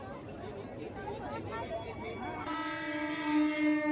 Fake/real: real